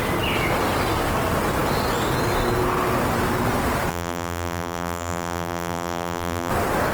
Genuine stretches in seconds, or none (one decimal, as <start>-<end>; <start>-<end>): 0.0-3.9; 6.5-6.9